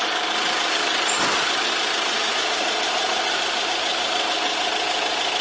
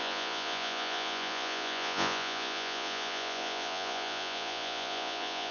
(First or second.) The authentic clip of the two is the first